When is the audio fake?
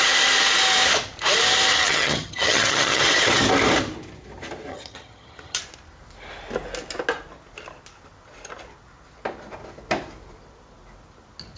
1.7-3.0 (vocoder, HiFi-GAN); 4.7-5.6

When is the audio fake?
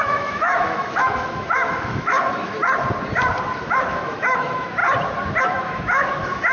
0.0-2.6 (autoencoder, DAC-VAE); 3.6-4.8; 5.4-6.5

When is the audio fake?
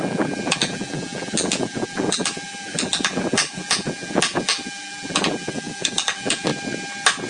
0.0-6.5 (vocoder, BigVGAN v2)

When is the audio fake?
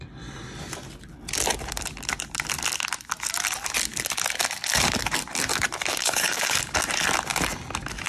5.9-6.6 (codec, DAC)